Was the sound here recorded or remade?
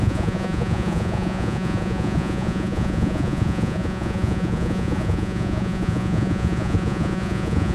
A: remade